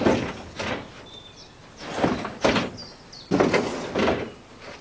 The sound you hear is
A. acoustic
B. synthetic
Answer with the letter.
A